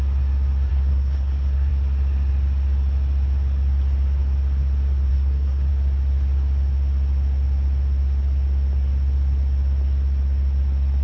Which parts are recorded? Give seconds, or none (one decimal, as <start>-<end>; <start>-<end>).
0.0-0.7; 1.7-5.1; 5.7-11.0